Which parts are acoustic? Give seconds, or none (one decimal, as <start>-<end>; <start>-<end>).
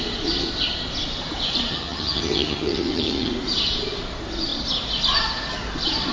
0.0-1.7; 3.3-6.1